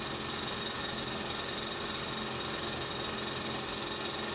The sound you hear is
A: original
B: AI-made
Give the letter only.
A